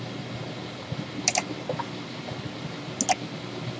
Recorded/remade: recorded